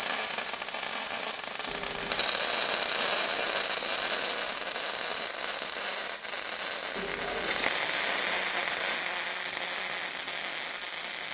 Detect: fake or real real